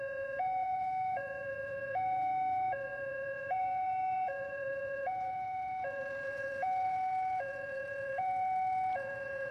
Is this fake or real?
fake